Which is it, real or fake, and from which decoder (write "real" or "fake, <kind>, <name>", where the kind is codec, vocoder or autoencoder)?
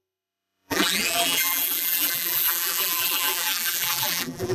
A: fake, vocoder, BigVGAN v2